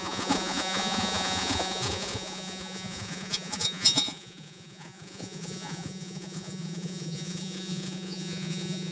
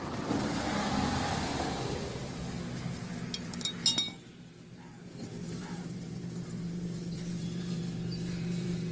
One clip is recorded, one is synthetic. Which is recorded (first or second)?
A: second